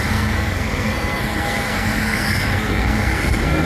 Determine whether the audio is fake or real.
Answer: fake